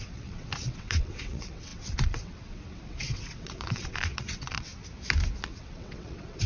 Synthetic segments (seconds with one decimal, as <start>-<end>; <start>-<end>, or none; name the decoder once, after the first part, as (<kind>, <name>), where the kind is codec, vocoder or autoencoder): 0.0-4.7 (vocoder, WaveNeXt); 5.4-6.5